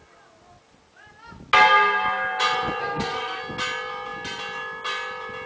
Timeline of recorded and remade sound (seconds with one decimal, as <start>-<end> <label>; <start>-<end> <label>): 0.0-2.8 recorded; 2.8-3.4 remade; 3.4-5.5 recorded